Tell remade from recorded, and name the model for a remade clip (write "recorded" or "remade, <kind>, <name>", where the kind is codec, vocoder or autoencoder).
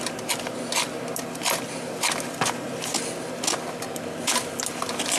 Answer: recorded